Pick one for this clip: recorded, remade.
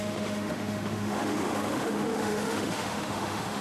remade